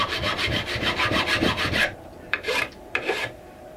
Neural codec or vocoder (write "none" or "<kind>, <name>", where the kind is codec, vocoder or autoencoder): vocoder, BigVGAN v2